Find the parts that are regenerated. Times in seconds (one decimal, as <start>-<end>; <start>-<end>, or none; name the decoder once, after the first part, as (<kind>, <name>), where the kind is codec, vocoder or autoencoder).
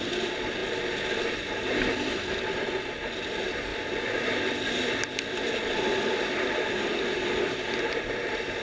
3.7-4.4 (vocoder, BigVGAN v2)